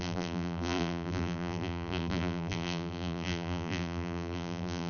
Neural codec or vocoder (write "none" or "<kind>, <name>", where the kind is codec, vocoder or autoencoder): vocoder, BigVGAN v2